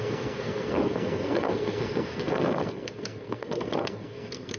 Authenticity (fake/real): fake